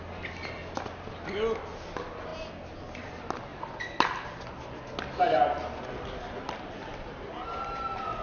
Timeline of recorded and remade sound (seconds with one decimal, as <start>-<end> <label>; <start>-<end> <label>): 0.0-8.2 recorded